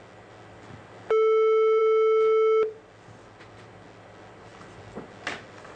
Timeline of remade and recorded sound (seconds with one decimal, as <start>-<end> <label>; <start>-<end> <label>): 0.0-5.8 recorded